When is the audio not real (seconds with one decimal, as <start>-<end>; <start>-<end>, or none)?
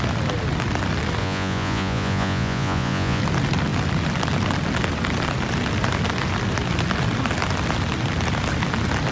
1.2-3.2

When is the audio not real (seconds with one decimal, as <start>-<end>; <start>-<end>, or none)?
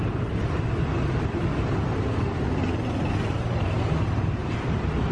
3.1-5.1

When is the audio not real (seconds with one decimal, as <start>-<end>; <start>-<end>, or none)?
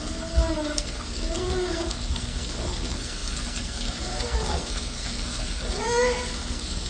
0.0-6.9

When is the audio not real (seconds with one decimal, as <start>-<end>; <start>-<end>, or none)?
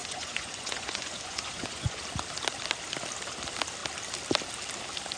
0.0-2.0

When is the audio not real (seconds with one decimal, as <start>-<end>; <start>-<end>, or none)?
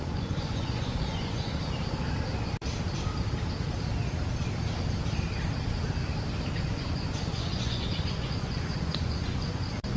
0.0-1.5; 6.5-10.0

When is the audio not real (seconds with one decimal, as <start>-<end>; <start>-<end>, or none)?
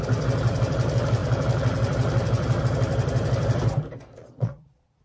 4.2-5.0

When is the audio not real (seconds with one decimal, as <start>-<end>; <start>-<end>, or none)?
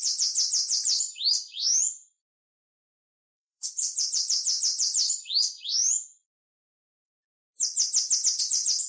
0.0-7.0; 8.4-8.9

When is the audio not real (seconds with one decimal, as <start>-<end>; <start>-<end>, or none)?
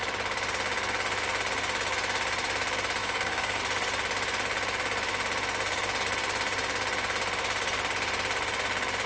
3.0-3.6